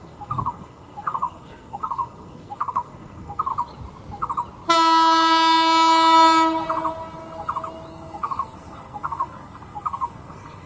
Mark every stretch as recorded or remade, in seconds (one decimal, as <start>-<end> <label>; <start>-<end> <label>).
0.0-3.5 remade; 3.5-7.9 recorded; 7.9-10.7 remade